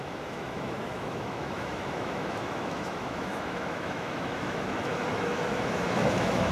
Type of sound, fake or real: fake